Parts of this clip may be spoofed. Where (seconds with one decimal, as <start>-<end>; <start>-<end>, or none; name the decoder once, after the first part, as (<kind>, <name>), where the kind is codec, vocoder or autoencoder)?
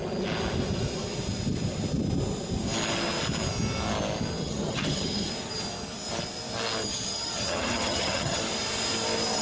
4.4-5.3 (vocoder, HiFi-GAN); 6.8-8.4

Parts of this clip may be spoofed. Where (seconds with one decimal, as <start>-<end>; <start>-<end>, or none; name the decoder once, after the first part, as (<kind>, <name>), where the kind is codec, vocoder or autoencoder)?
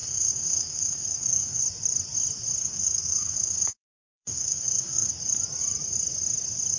0.0-1.6 (codec, SNAC); 2.6-5.1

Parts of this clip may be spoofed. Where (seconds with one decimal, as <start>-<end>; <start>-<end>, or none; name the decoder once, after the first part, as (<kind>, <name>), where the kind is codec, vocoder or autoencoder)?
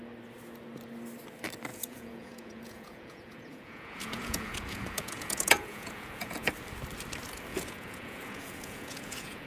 1.7-6.5 (vocoder, Vocos); 7.5-9.5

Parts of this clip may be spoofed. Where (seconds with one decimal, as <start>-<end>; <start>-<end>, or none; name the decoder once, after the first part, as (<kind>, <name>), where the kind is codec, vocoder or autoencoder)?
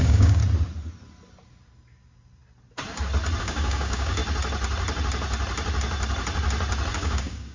0.0-0.4 (codec, DAC); 3.4-4.2; 6.9-7.5